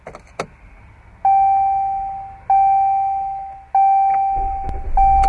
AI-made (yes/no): no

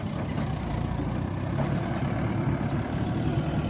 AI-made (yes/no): no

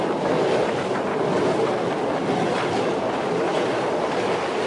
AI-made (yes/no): no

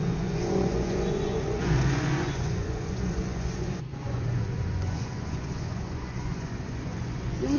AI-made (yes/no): yes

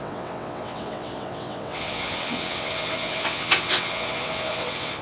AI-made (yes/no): yes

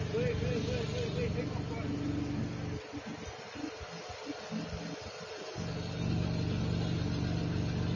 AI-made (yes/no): no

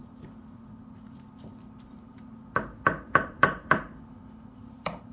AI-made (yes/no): yes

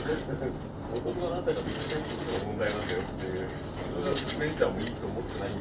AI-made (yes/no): no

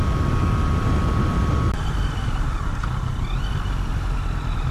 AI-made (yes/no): no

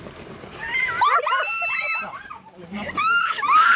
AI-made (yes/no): yes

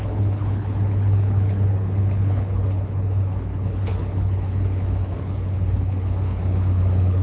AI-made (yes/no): yes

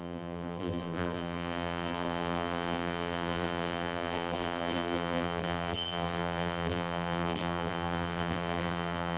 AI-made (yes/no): yes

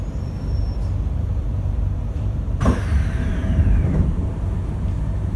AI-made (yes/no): yes